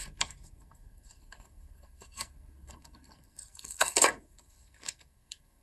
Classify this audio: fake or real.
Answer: fake